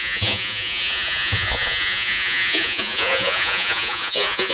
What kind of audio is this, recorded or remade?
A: remade